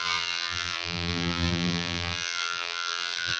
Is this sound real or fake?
fake